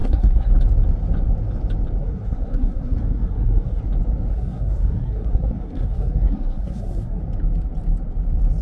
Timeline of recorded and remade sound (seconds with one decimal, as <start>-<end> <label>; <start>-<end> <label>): 0.0-0.5 remade; 0.5-2.0 recorded; 2.0-3.8 remade; 3.8-4.3 recorded; 4.3-7.2 remade; 7.2-8.6 recorded